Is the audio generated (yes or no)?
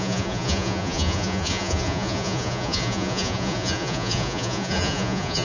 yes